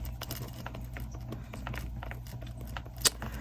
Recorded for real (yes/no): yes